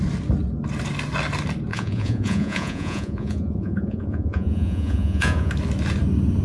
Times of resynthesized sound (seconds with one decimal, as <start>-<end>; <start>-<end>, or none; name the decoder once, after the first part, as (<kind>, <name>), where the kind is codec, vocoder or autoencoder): 1.7-5.5 (vocoder, Vocos)